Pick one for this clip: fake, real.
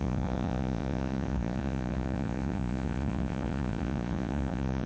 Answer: fake